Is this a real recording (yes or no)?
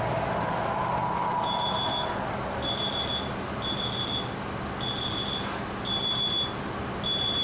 yes